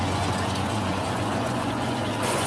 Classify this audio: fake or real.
fake